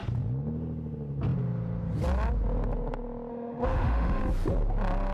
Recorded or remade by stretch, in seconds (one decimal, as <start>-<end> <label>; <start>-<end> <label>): 0.0-3.3 recorded; 3.3-4.2 remade; 4.2-5.1 recorded